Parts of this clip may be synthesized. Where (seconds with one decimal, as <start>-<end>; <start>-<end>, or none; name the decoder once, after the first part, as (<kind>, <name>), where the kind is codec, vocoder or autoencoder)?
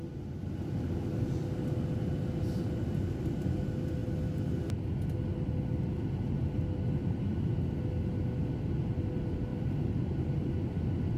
9.5-10.5 (vocoder, BigVGAN v2)